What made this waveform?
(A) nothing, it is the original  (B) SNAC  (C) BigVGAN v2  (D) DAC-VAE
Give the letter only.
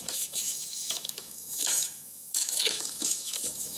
D